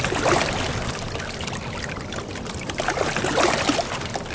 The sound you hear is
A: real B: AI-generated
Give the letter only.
A